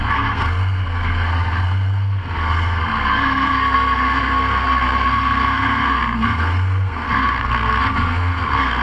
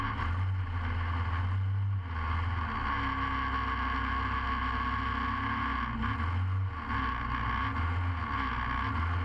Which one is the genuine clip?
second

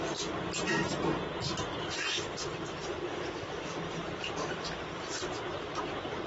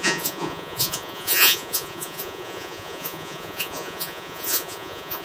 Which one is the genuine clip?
first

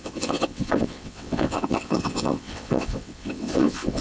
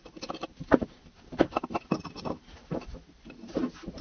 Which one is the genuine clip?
second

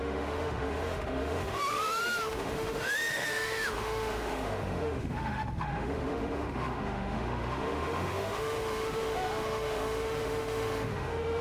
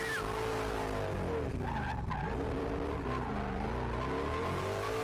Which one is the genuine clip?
second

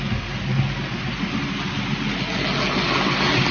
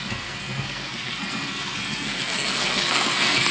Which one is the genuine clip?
first